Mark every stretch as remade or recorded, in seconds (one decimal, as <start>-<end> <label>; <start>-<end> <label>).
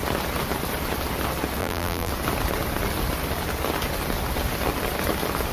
0.0-1.6 recorded; 1.6-2.1 remade; 2.1-5.5 recorded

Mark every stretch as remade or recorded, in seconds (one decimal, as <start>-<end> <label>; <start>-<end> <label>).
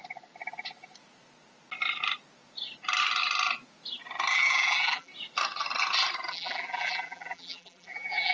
0.0-4.3 recorded; 4.3-5.1 remade; 5.1-6.3 recorded; 6.3-8.3 remade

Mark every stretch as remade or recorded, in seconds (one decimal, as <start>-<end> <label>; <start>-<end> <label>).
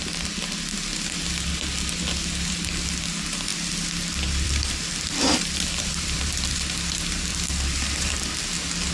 0.0-3.5 recorded; 3.5-6.5 remade; 6.5-7.3 recorded; 7.3-8.4 remade; 8.4-8.9 recorded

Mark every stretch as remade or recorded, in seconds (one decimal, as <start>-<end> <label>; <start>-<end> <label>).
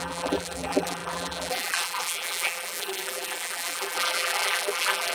0.0-5.1 remade